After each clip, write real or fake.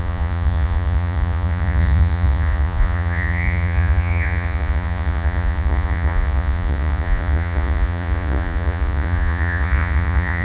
fake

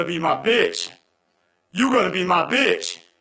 fake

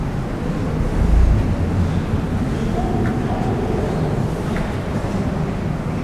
real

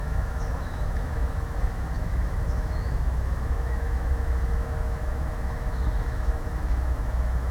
fake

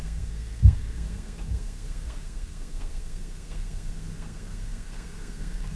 fake